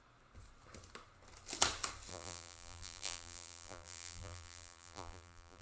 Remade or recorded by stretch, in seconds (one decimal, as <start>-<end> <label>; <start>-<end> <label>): 0.0-2.1 recorded; 2.1-5.6 remade